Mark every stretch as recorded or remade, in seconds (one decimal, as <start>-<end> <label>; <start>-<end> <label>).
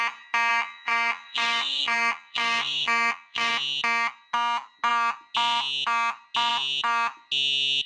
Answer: 0.0-0.5 recorded; 0.5-3.5 remade; 3.5-7.9 recorded